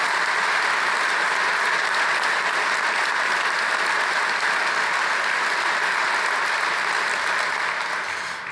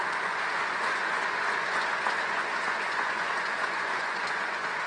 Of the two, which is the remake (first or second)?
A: second